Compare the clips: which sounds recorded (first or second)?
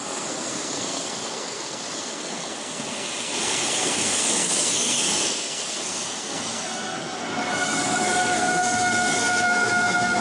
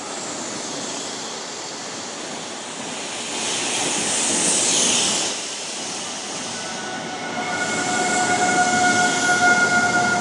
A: second